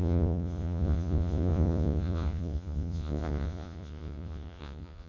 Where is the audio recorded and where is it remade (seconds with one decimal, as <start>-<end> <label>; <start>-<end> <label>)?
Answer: 0.0-5.1 remade